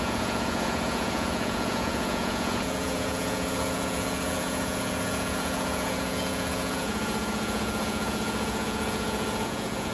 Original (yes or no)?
no